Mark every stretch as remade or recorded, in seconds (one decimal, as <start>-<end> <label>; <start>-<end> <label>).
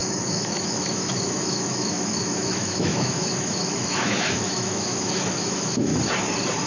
0.0-5.9 remade; 5.9-6.7 recorded